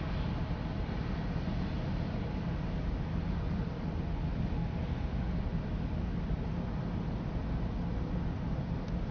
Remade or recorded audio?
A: recorded